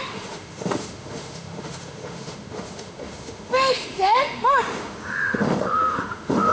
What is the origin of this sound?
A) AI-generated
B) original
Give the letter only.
A